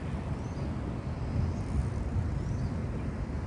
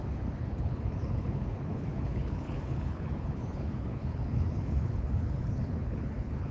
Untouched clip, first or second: first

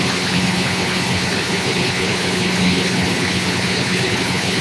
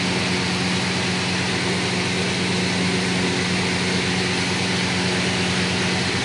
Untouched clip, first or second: second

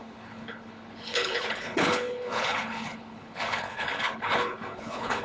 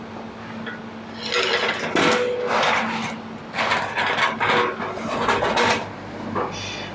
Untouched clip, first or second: second